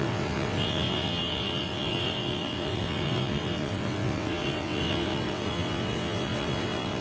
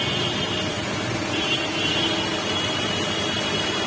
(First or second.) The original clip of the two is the second